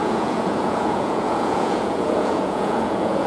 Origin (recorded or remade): remade